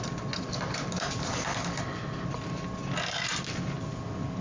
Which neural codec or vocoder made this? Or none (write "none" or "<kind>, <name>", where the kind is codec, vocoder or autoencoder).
none